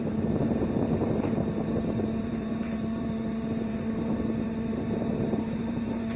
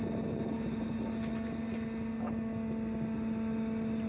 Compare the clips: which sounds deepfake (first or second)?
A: first